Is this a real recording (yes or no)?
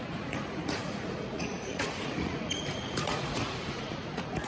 no